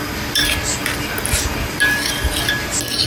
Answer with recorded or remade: recorded